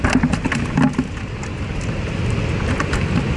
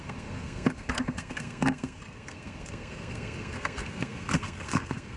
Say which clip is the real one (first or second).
first